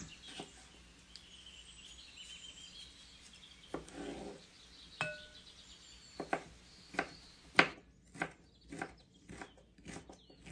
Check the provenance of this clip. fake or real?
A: real